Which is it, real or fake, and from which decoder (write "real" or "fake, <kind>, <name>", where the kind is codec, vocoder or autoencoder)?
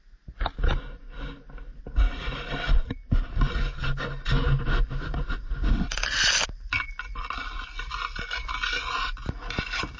real